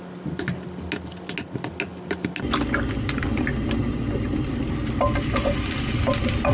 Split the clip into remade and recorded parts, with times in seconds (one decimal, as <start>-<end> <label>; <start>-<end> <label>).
0.0-6.5 recorded